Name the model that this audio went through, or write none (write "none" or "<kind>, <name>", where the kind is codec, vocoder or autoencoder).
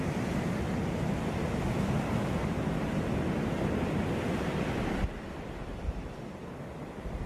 none